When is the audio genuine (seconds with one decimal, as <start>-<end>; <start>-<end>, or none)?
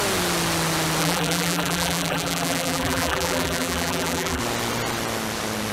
0.0-1.0; 4.4-5.7